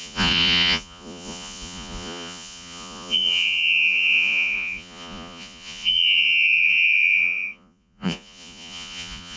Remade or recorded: remade